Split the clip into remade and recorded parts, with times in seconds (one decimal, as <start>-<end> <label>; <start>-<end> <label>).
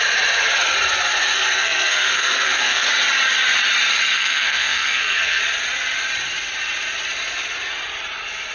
0.0-1.3 recorded; 1.3-2.9 remade; 2.9-4.1 recorded; 4.1-5.4 remade; 5.4-8.5 recorded